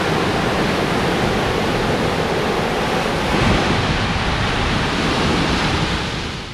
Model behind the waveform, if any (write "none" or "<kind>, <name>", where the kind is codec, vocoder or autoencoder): none